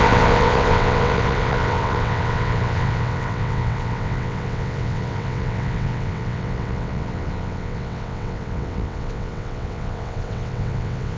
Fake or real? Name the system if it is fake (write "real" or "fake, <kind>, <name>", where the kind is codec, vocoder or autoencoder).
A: fake, vocoder, WaveNeXt